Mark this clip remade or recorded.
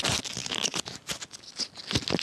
recorded